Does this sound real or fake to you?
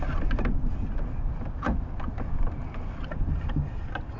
real